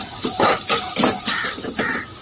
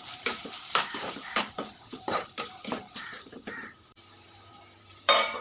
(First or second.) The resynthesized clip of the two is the second